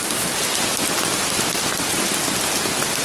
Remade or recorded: recorded